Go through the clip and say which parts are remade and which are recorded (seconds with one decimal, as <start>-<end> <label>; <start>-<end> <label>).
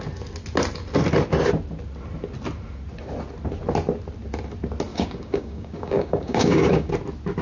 0.0-4.9 recorded; 4.9-6.9 remade; 6.9-7.4 recorded